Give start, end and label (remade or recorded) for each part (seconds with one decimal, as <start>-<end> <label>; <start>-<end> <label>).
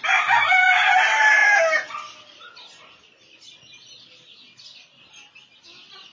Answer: 0.0-6.1 recorded